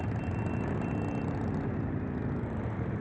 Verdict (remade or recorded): recorded